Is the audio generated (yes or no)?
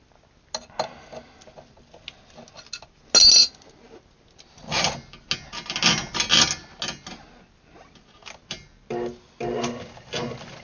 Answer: no